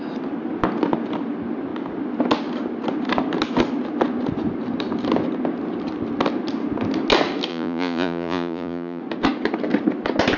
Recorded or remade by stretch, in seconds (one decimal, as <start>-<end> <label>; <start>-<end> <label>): 0.0-7.5 recorded; 7.5-9.0 remade; 9.0-10.4 recorded